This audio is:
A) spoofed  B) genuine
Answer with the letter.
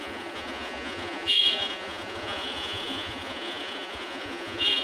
A